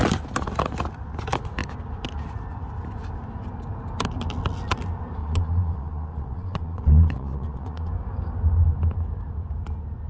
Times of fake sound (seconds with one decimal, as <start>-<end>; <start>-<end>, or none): 5.2-7.9